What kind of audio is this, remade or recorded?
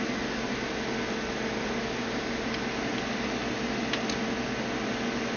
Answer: recorded